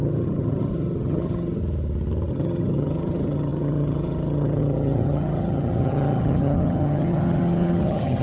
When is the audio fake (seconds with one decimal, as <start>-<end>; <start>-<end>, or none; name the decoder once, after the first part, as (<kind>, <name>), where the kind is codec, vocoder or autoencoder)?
0.0-1.6 (vocoder, HiFi-GAN); 2.3-8.2

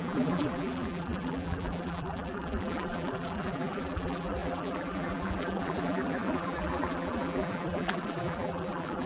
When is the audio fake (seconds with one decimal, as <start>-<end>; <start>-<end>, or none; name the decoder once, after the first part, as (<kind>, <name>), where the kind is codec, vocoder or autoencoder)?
0.0-9.1 (vocoder, BigVGAN v2)